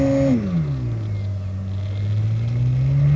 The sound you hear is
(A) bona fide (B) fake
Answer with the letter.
A